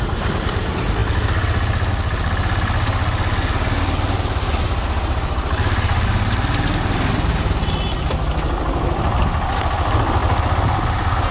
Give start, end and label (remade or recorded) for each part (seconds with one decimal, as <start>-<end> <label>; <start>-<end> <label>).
0.0-11.3 recorded